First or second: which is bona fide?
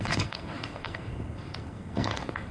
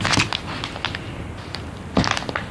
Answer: second